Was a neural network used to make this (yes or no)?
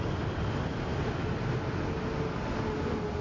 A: no